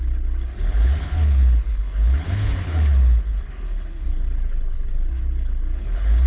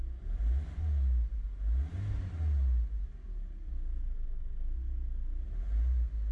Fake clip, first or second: first